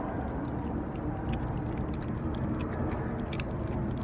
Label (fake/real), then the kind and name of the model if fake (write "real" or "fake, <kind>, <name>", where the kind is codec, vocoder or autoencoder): real